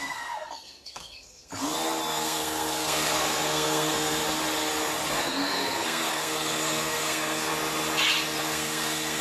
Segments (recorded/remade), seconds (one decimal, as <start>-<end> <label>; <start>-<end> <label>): 0.0-1.5 remade; 1.5-2.1 recorded; 2.1-4.2 remade; 4.2-5.1 recorded; 5.1-7.5 remade; 7.5-8.4 recorded; 8.4-9.2 remade